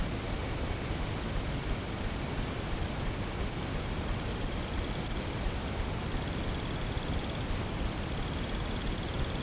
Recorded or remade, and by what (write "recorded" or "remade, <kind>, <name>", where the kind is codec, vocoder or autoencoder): recorded